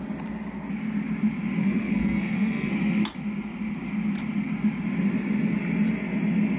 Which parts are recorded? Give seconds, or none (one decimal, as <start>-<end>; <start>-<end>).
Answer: 0.0-1.6; 2.7-6.6